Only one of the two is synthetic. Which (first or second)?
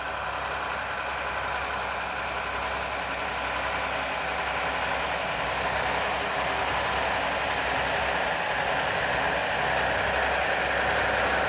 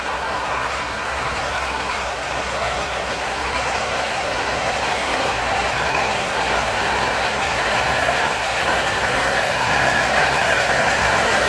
second